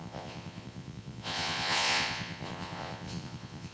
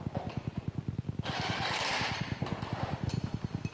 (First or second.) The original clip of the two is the second